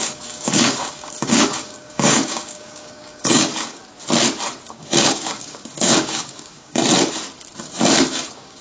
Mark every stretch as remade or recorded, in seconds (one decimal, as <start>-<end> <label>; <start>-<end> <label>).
0.0-3.8 remade; 3.8-4.7 recorded; 4.7-6.8 remade; 6.8-8.1 recorded; 8.1-8.6 remade